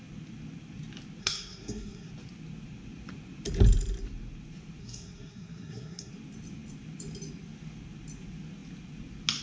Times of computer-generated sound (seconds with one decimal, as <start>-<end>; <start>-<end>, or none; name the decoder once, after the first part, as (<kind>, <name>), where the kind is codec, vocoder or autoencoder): 1.2-2.1 (codec, SNAC); 4.8-6.1